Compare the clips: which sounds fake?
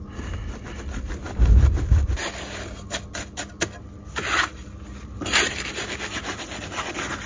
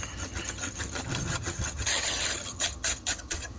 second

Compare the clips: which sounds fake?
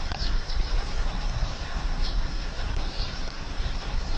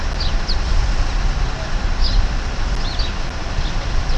first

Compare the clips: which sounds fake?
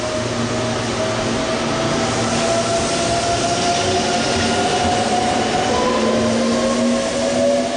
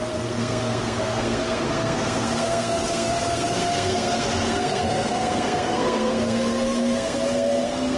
second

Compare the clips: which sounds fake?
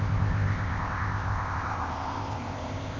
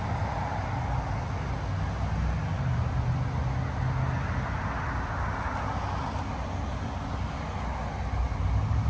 first